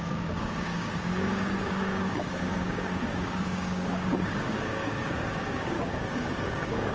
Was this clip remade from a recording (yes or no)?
yes